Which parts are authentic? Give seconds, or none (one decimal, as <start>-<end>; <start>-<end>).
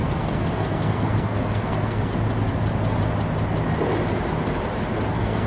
2.1-5.1